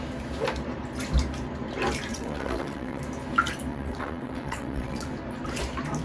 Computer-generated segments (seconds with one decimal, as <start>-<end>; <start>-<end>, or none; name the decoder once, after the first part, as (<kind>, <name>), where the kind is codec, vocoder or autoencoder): 2.1-3.0 (vocoder, WaveNeXt); 3.7-5.1